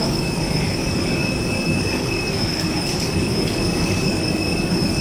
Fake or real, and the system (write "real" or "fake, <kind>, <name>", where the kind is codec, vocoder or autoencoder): fake, codec, DAC